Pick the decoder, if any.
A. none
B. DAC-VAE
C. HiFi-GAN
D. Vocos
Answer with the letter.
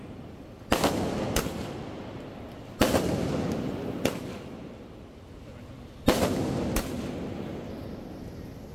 A